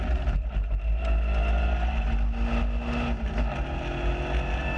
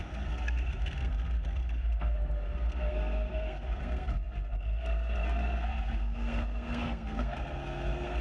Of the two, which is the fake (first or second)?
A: second